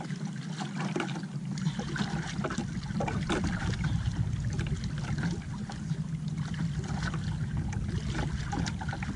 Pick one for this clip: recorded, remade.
recorded